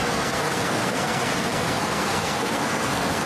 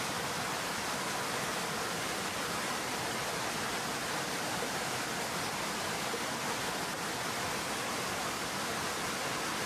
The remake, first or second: first